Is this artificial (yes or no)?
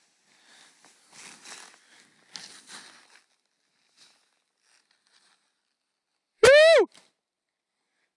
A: no